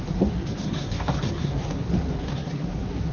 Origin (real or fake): fake